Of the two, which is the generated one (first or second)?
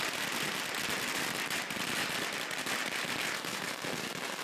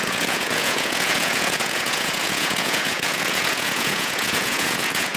second